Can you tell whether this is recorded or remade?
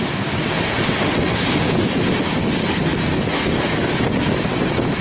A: recorded